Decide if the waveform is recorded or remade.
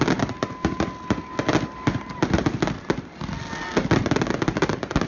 recorded